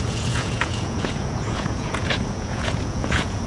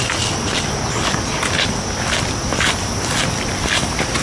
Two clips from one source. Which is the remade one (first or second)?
first